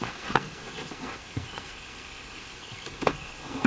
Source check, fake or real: fake